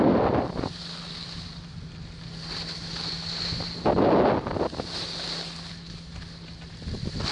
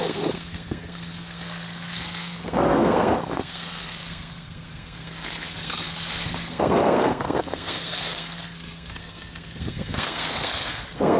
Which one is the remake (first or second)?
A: second